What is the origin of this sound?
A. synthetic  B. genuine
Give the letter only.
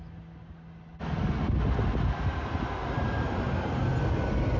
B